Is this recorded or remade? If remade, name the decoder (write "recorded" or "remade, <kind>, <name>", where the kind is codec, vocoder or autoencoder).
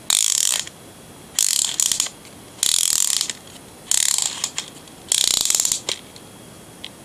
recorded